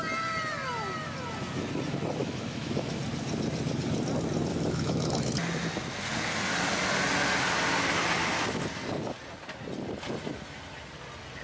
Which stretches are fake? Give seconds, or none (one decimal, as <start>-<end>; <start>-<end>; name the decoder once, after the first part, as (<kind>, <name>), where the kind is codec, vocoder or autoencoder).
2.2-3.0 (autoencoder, DAC-VAE); 4.5-5.3